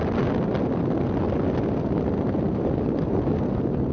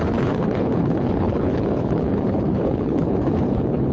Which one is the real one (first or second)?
first